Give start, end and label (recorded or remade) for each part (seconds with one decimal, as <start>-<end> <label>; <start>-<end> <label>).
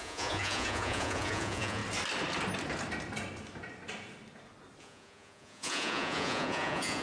0.0-1.8 remade; 1.8-4.8 recorded; 4.8-7.0 remade